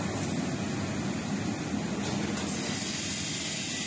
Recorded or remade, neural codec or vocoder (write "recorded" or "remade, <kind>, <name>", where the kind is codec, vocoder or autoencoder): recorded